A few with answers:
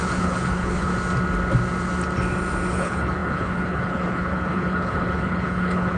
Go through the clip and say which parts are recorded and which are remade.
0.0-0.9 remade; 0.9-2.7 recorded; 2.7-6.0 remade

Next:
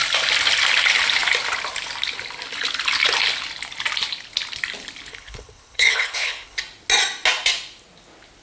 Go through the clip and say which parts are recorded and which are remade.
0.0-5.1 recorded; 5.1-6.6 remade; 6.6-8.4 recorded

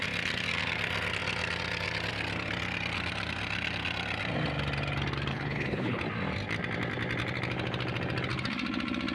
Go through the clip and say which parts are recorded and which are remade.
0.0-5.3 recorded; 5.3-6.0 remade; 6.0-9.1 recorded

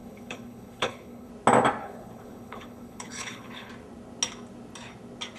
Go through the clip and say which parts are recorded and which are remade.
0.0-1.3 remade; 1.3-1.8 recorded; 1.8-3.7 remade; 3.7-5.4 recorded

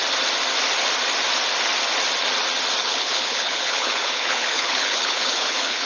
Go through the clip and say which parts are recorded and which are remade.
0.0-2.8 recorded; 2.8-5.9 remade

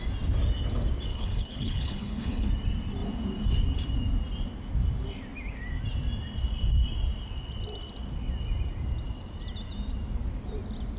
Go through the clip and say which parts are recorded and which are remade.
0.0-1.1 recorded; 1.1-2.5 remade; 2.5-11.0 recorded

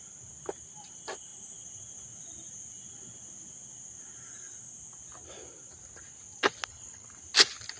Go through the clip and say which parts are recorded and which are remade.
0.0-6.7 recorded; 6.7-7.2 remade; 7.2-7.8 recorded

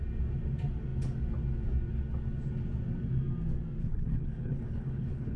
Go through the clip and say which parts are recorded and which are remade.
0.0-3.8 recorded; 3.8-5.4 remade